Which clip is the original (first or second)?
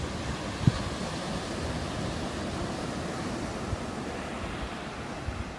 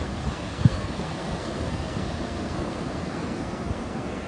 first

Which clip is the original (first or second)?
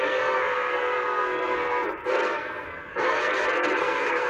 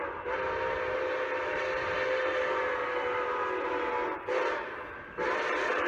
second